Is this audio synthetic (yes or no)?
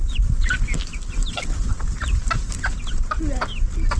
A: no